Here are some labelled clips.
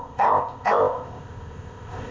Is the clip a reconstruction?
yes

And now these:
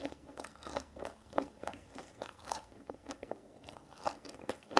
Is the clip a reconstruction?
yes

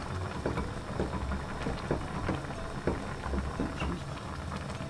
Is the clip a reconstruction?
no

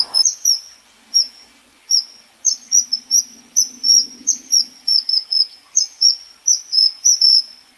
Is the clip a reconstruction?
yes